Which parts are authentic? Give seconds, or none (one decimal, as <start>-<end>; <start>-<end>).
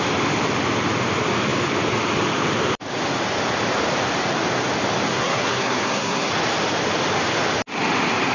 0.0-5.1; 6.3-8.3